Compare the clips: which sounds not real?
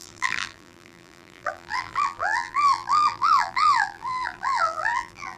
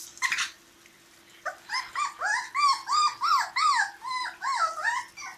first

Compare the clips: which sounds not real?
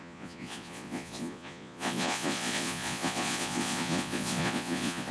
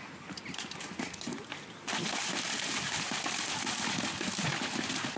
first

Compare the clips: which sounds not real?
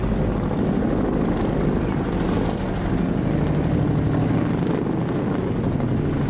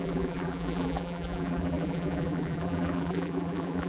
second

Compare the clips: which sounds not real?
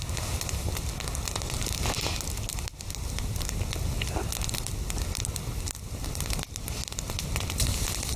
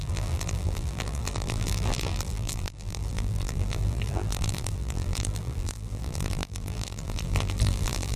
second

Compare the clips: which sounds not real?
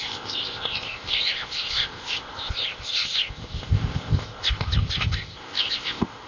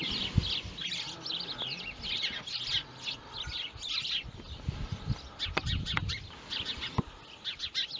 first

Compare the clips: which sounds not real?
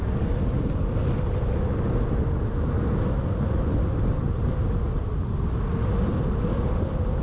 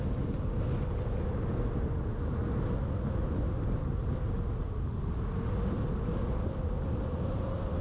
first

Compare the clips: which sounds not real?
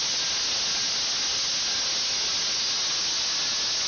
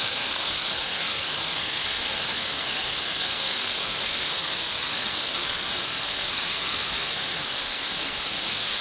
second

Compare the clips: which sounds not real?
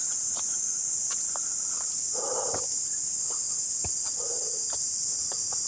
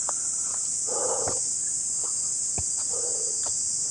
first